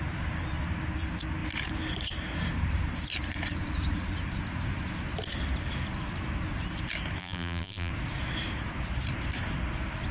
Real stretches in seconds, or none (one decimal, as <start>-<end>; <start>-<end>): 0.0-7.2; 7.9-10.1